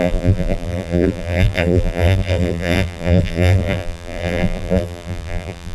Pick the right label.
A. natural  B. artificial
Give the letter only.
B